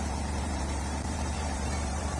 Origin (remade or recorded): remade